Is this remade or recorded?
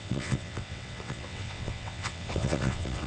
remade